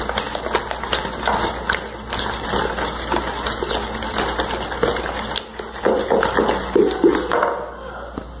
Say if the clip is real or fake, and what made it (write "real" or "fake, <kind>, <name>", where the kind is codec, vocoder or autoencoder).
real